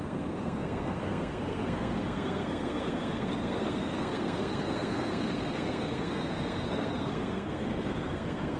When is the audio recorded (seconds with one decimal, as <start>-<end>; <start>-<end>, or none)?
none